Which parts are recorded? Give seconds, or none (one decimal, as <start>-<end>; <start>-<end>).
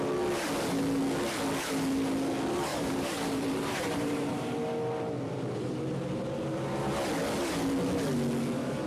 0.0-2.7; 4.5-8.9